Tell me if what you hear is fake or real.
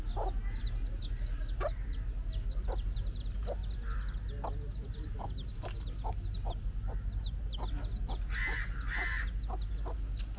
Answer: real